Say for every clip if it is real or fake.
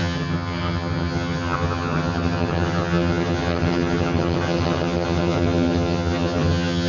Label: fake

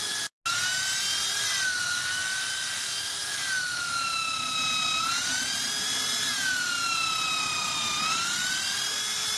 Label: real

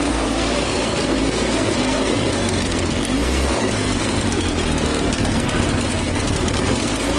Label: fake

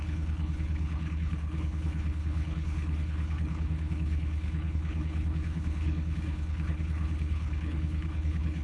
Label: fake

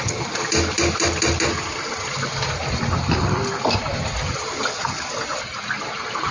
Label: real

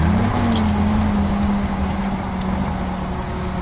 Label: real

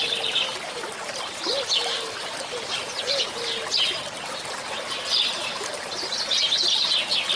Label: real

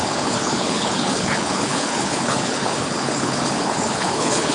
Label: fake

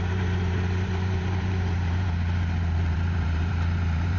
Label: fake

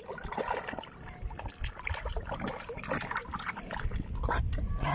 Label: real